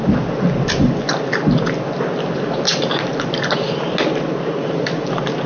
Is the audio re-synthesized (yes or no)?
no